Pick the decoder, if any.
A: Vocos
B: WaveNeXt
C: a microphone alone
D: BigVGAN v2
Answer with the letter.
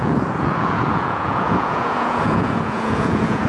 A